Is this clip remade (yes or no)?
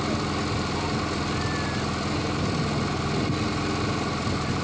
no